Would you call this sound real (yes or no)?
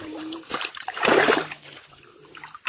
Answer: no